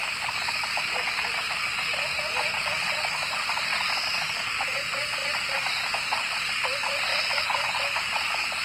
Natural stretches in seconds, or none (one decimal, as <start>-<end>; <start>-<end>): 0.0-8.6